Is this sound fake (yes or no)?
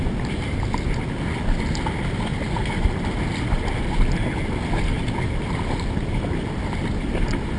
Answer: no